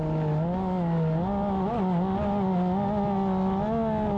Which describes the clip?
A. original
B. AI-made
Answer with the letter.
A